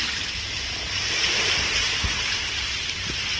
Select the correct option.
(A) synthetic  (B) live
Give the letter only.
B